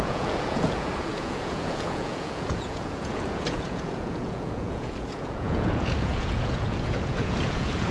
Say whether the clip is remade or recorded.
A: remade